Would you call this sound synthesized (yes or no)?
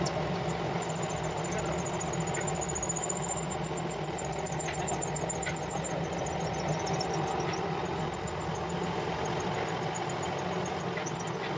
no